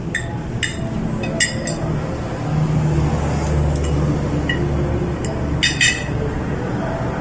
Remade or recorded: recorded